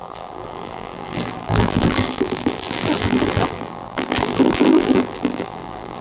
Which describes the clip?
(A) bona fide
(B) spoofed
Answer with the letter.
B